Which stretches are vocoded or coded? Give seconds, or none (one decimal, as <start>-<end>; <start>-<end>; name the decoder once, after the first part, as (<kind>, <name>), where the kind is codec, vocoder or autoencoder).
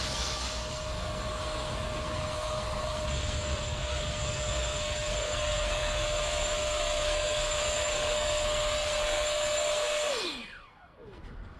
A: 0.0-11.6 (codec, SNAC)